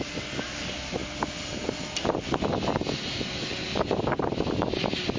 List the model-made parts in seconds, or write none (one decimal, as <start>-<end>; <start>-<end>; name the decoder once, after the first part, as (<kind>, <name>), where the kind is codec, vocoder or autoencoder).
none